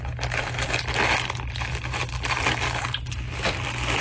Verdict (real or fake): real